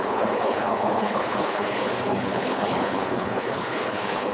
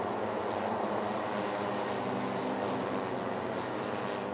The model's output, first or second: first